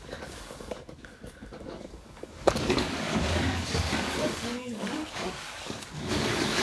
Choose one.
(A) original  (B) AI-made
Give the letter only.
B